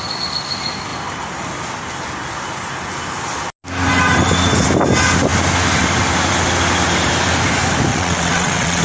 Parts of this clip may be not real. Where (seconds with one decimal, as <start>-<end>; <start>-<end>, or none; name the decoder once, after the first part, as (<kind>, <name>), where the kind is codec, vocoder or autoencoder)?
7.9-8.8 (vocoder, WaveNeXt)